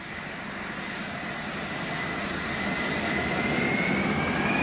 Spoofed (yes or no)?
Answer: no